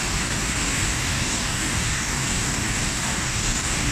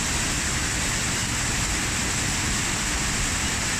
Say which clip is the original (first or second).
second